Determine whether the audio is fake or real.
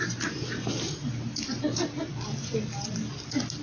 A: real